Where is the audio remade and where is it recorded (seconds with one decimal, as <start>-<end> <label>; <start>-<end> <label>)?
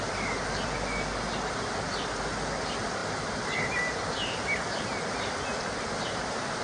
0.0-6.6 recorded